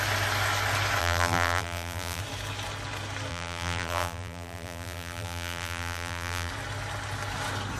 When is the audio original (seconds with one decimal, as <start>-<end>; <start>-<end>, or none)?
0.0-1.0; 2.2-3.3; 6.5-7.8